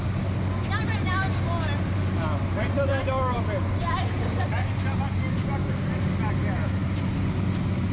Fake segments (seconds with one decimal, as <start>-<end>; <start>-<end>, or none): none